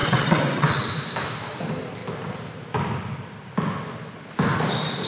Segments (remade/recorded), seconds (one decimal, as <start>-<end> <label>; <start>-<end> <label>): 0.0-0.9 remade; 0.9-5.1 recorded